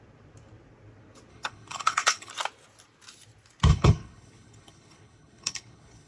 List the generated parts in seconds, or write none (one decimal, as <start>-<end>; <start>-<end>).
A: 1.3-2.3; 3.7-6.1